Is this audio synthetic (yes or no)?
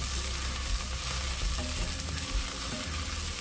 no